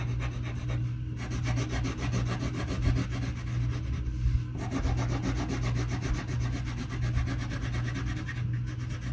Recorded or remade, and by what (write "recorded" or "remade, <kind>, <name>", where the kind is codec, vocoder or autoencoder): recorded